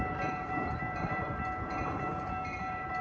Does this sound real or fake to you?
fake